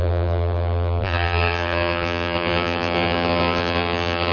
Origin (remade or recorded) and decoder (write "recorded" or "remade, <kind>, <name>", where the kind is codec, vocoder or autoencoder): remade, vocoder, BigVGAN v2